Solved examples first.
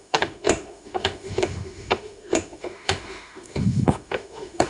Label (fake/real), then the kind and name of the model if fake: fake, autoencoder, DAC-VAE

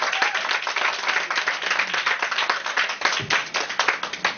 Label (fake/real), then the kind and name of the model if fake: real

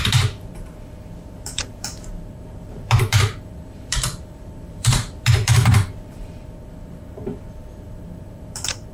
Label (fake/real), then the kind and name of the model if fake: fake, vocoder, BigVGAN v2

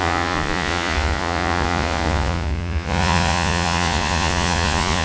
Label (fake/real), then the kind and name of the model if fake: fake, vocoder, Vocos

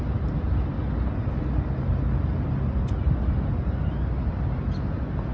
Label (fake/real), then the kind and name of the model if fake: real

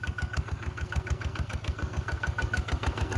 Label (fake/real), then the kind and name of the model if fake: fake, codec, SNAC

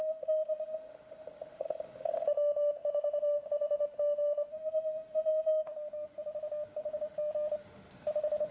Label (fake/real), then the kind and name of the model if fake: fake, autoencoder, DAC-VAE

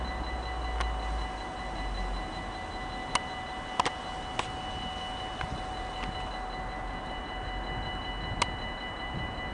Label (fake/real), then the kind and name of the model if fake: real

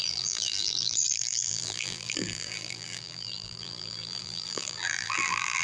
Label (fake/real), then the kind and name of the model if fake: fake, vocoder, BigVGAN v2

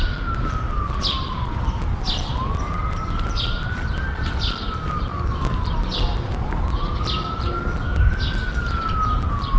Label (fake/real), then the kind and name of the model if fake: real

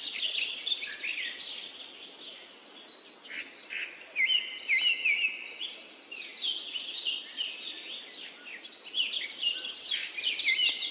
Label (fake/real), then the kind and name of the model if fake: real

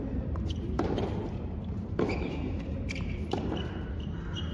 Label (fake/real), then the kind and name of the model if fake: fake, vocoder, BigVGAN v2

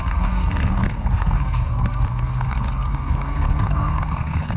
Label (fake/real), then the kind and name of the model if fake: fake, codec, SNAC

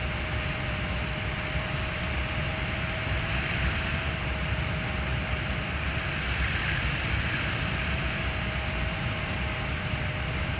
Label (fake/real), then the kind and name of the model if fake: real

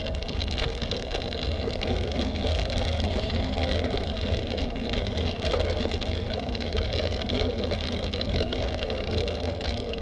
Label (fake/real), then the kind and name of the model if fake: fake, codec, SNAC